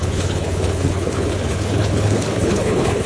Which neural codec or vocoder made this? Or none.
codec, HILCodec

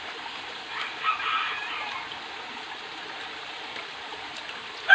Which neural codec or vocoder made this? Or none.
none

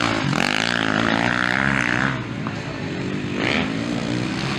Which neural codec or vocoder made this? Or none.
none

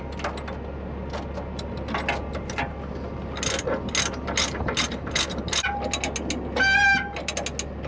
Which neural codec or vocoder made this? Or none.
none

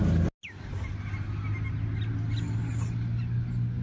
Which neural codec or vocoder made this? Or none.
none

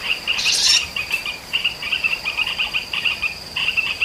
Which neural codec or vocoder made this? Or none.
vocoder, BigVGAN v2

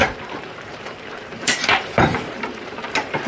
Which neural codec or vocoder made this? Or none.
vocoder, BigVGAN v2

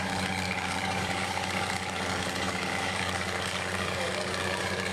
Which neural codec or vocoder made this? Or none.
codec, DAC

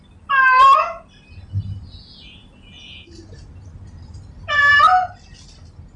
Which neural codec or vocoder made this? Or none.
none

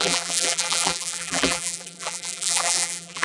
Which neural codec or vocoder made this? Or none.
vocoder, BigVGAN v2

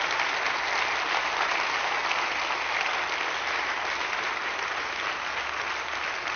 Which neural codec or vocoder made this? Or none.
none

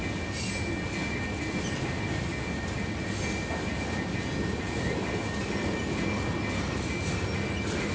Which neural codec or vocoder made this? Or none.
none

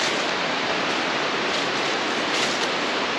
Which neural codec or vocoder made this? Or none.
vocoder, BigVGAN v2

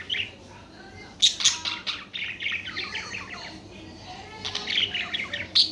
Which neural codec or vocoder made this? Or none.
none